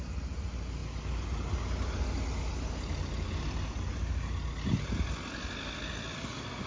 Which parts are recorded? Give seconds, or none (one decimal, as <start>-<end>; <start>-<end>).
0.0-6.7